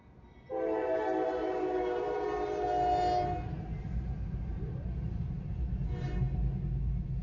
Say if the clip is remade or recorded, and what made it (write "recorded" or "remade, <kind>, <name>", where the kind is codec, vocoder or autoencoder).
recorded